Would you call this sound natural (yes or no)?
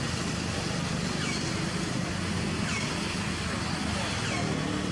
yes